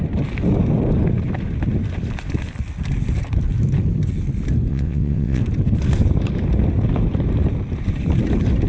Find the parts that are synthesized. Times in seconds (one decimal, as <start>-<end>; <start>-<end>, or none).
4.7-5.4